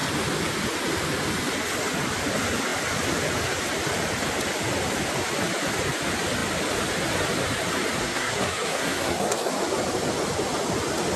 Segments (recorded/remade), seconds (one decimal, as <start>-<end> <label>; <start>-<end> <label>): 0.0-8.0 recorded; 8.0-9.5 remade; 9.5-11.2 recorded